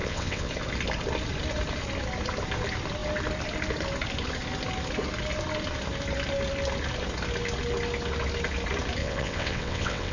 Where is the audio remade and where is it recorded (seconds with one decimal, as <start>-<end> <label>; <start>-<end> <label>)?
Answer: 0.0-0.5 remade; 0.5-9.0 recorded; 9.0-10.1 remade